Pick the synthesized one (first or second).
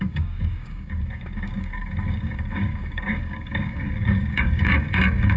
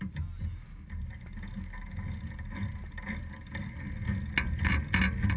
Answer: first